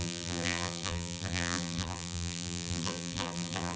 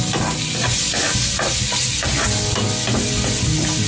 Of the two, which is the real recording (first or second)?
second